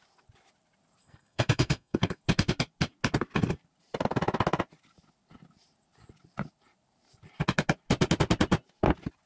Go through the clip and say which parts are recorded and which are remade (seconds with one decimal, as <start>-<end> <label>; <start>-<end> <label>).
0.0-1.0 recorded; 1.0-2.2 remade; 2.2-9.3 recorded